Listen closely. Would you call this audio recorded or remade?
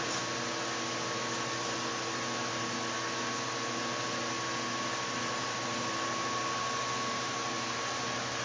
recorded